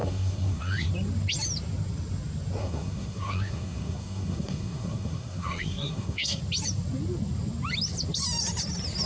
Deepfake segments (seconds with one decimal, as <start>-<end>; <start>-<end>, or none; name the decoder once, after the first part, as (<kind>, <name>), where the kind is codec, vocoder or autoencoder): 0.0-0.9 (codec, SNAC); 2.6-6.4